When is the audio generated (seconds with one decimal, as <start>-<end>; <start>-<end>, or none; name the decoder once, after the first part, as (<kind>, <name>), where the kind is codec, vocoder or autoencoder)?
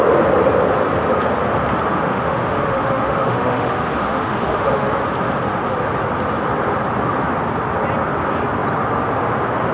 2.0-5.0 (autoencoder, DAC-VAE)